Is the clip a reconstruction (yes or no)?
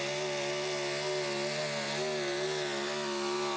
no